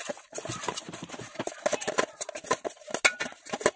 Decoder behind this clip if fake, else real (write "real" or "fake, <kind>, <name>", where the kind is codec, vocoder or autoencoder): real